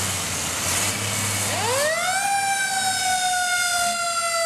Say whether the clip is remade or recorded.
recorded